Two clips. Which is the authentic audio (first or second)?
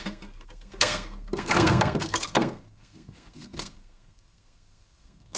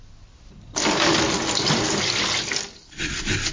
second